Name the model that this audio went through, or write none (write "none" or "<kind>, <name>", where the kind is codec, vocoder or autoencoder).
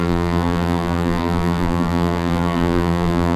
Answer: vocoder, BigVGAN v2